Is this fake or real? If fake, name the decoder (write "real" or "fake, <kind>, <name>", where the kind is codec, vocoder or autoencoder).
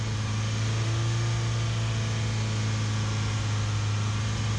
real